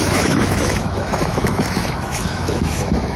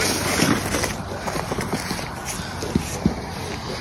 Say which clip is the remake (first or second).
first